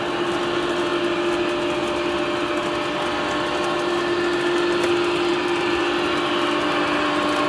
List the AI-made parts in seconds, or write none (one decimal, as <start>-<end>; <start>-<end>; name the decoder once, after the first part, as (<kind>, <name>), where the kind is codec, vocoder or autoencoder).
5.3-5.8 (vocoder, BigVGAN v2)